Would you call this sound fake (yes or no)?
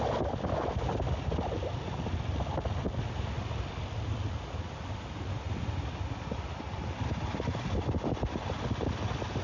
no